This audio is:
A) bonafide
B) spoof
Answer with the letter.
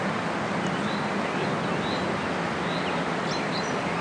A